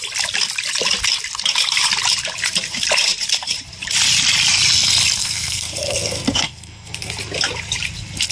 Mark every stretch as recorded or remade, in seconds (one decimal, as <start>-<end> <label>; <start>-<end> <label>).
0.0-5.2 recorded; 5.2-7.1 remade; 7.1-8.3 recorded